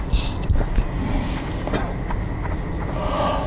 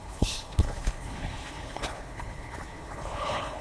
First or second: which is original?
first